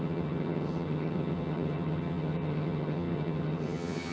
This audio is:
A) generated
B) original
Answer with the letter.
A